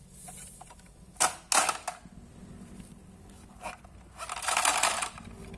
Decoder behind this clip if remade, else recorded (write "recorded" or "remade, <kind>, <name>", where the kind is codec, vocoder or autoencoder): recorded